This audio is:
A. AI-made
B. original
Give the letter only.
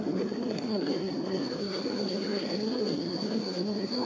A